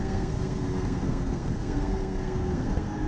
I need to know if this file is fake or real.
fake